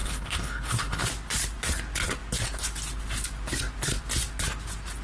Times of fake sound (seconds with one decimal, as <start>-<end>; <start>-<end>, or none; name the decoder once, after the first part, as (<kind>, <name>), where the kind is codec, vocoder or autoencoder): 0.0-1.0 (codec, HILCodec)